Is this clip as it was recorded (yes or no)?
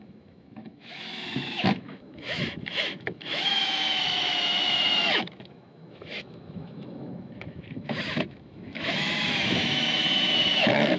no